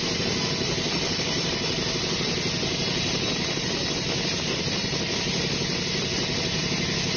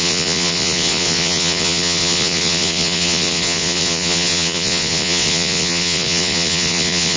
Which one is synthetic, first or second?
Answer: second